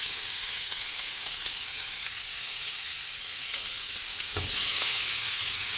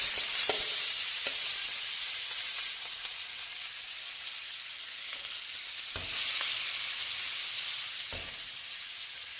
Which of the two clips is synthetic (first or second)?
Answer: first